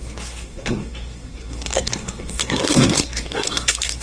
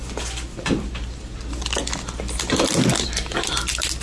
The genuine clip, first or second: second